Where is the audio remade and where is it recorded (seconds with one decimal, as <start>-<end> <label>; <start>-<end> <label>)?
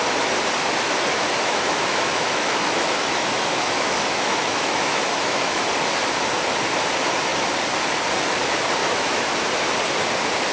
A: 0.0-1.1 recorded; 1.1-5.7 remade; 5.7-8.8 recorded; 8.8-9.3 remade; 9.3-10.5 recorded